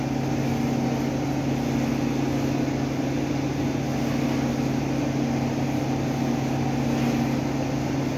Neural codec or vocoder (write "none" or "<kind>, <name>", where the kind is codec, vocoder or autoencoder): none